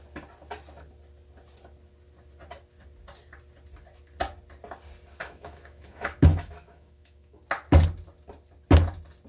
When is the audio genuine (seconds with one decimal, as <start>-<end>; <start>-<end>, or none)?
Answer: 0.0-5.2; 7.4-9.3